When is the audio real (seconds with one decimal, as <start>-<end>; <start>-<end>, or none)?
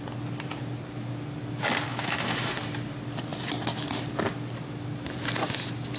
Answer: 0.0-1.9; 2.5-6.0